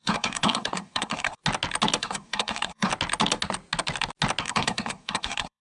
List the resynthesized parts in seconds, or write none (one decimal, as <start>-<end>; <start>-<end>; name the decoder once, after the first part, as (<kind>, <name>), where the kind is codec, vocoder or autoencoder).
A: 0.0-1.4 (codec, SNAC); 2.0-2.9; 4.4-5.6